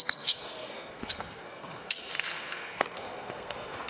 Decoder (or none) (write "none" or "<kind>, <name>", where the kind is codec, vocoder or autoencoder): codec, SNAC